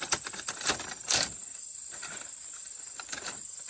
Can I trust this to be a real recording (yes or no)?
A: yes